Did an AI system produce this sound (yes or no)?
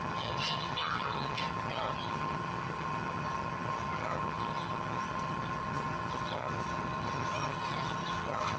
yes